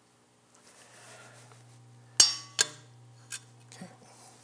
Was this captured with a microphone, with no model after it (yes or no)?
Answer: yes